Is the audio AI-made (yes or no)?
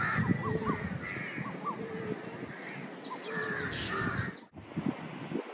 no